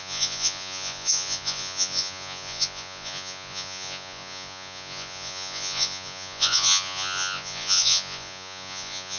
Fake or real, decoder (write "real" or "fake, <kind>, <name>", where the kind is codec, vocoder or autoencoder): fake, vocoder, Vocos